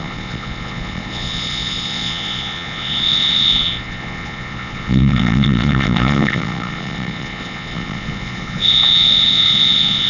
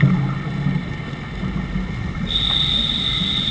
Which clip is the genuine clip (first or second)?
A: second